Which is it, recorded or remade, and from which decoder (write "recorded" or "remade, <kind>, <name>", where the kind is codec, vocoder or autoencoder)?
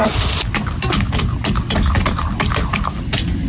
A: recorded